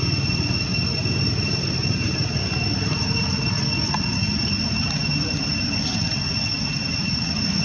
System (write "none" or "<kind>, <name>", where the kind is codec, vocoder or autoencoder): none